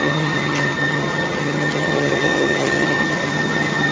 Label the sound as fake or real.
fake